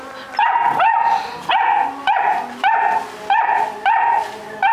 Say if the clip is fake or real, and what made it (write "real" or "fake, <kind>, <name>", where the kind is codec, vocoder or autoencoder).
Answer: real